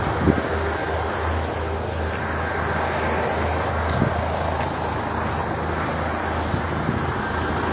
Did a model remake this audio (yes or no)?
no